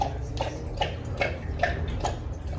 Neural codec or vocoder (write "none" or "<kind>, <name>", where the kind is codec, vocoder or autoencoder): none